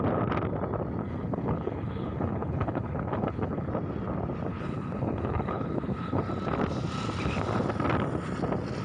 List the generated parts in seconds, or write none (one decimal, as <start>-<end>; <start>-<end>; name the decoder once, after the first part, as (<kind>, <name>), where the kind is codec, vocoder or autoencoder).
1.0-3.7 (codec, HILCodec); 4.5-6.2